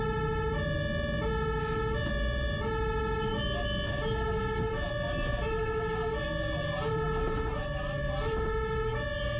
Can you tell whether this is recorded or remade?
recorded